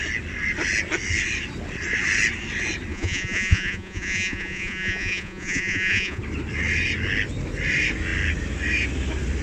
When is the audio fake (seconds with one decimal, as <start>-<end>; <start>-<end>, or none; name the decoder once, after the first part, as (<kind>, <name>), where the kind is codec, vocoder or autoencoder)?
2.9-6.2 (vocoder, Vocos)